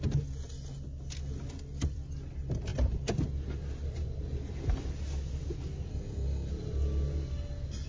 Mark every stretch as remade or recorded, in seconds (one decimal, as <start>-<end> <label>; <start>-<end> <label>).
0.0-5.9 recorded; 5.9-6.5 remade; 6.5-7.9 recorded

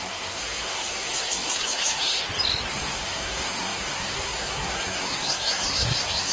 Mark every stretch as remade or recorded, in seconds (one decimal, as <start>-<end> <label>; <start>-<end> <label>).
0.0-2.2 remade; 2.2-2.7 recorded; 2.7-6.3 remade

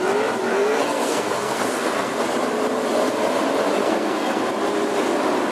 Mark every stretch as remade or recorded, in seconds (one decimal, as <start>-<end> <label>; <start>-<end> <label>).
0.0-0.5 recorded; 0.5-2.2 remade; 2.2-3.8 recorded; 3.8-4.4 remade; 4.4-5.5 recorded

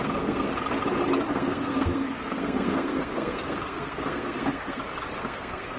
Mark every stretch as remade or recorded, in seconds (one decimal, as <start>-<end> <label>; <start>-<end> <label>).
0.0-0.5 remade; 0.5-1.3 recorded; 1.3-4.8 remade; 4.8-5.2 recorded; 5.2-5.8 remade

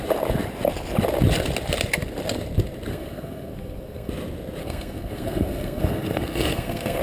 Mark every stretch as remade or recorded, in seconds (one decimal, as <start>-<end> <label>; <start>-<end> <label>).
0.0-2.9 recorded; 2.9-4.1 remade; 4.1-4.6 recorded; 4.6-7.0 remade